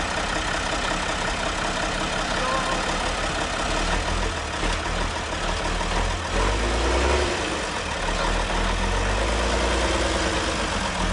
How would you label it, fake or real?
real